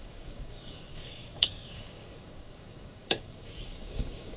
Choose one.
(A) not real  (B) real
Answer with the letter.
A